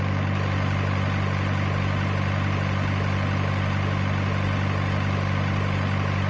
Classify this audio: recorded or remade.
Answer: recorded